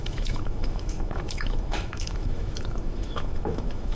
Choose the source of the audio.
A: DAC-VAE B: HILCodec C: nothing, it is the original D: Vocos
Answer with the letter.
A